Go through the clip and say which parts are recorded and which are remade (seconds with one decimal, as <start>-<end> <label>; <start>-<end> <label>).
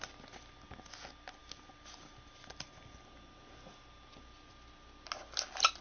0.0-5.8 recorded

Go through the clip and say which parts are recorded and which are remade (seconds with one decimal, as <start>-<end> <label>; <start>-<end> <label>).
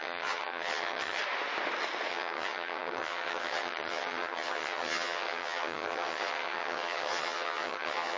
0.0-1.2 remade; 1.2-2.1 recorded; 2.1-8.2 remade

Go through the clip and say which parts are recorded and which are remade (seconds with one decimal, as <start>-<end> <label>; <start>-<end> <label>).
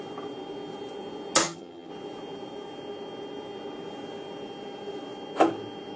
0.0-1.4 recorded; 1.4-1.9 remade; 1.9-6.0 recorded